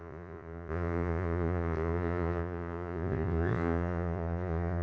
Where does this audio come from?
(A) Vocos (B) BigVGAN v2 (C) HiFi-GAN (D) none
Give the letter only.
A